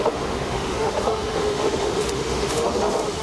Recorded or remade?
remade